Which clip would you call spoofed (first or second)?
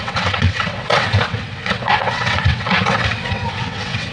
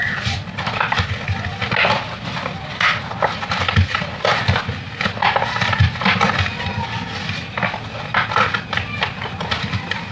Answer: first